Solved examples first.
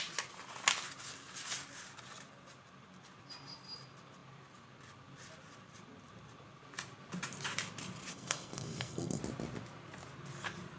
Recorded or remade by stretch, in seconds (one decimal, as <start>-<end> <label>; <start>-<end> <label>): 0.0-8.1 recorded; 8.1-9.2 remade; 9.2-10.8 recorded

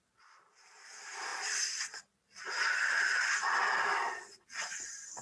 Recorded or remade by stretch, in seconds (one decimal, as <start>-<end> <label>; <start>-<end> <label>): 0.0-5.2 recorded

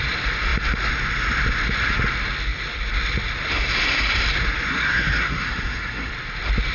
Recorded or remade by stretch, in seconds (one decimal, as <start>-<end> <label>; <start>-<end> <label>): 0.0-4.7 recorded; 4.7-6.1 remade; 6.1-6.7 recorded